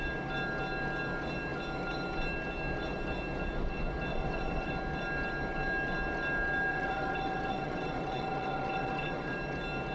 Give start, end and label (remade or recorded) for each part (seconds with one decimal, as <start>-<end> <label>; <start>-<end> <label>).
0.0-4.1 recorded; 4.1-4.7 remade; 4.7-6.7 recorded; 6.7-9.3 remade; 9.3-9.9 recorded